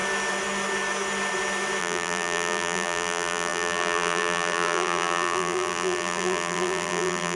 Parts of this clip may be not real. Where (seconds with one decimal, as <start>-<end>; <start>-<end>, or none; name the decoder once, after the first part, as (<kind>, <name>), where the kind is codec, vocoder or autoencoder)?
1.8-7.4 (vocoder, BigVGAN v2)